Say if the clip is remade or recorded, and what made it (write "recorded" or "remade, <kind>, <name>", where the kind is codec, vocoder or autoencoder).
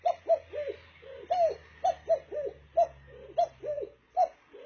recorded